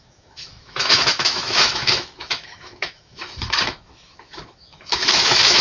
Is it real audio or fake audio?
fake